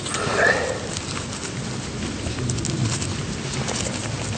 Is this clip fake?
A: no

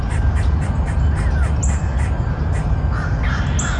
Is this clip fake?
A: no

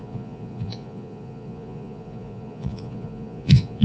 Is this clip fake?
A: yes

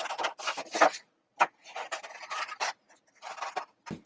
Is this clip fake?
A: no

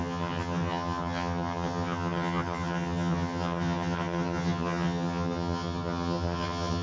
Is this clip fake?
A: yes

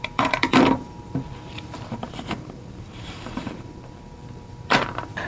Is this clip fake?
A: yes